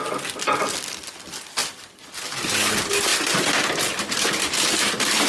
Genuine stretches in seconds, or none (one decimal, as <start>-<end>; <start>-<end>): 0.0-5.3